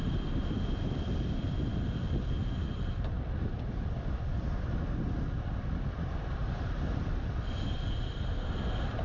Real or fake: fake